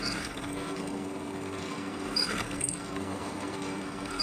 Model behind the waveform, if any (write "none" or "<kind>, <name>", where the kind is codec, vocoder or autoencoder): codec, SNAC